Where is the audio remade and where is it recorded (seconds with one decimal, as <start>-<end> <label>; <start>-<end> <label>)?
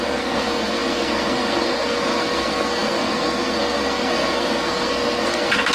0.0-5.7 remade